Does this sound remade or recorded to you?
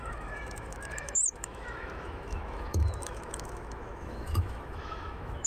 remade